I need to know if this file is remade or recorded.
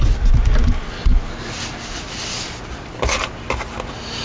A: recorded